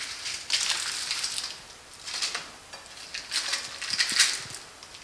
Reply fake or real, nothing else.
real